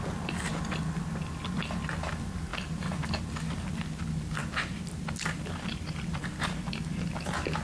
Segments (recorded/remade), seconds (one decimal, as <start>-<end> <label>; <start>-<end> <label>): 0.0-7.6 recorded